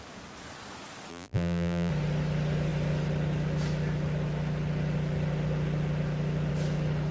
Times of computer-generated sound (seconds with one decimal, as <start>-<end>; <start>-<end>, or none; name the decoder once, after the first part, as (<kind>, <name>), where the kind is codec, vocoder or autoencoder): 1.1-1.9 (vocoder, BigVGAN v2)

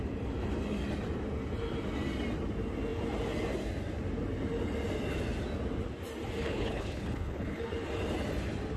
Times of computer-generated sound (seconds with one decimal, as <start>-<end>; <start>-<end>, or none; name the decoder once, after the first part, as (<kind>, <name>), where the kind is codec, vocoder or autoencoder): 6.4-7.6 (codec, HILCodec)

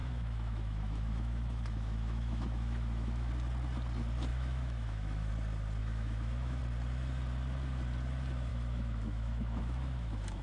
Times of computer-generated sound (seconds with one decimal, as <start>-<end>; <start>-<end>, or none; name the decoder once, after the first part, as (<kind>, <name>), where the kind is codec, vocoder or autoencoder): 0.0-3.3 (autoencoder, DAC-VAE); 4.3-5.3; 5.8-6.6; 8.5-10.4

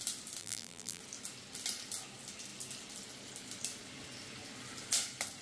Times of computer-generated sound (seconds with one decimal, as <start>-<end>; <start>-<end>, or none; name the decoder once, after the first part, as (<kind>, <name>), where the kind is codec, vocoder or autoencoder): 0.4-1.0 (vocoder, BigVGAN v2)

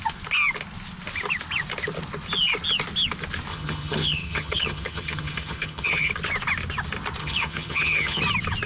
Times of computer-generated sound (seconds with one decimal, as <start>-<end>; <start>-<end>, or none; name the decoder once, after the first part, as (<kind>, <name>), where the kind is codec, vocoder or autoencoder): 3.5-6.1 (vocoder, HiFi-GAN); 7.2-8.2

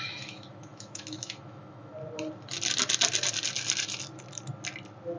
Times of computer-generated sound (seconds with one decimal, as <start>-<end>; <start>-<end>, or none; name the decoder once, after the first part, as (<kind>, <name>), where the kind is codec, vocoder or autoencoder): 0.0-1.9 (autoencoder, DAC-VAE)